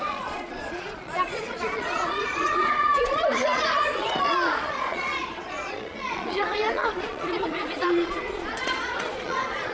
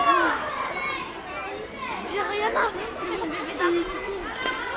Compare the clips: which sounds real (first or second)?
second